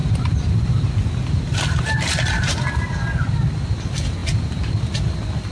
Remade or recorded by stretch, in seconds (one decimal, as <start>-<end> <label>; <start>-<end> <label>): 0.0-5.5 recorded